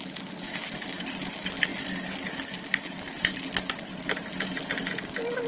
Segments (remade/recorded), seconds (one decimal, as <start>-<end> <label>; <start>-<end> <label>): 0.0-5.5 recorded